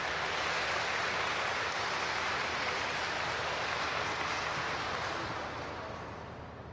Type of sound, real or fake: real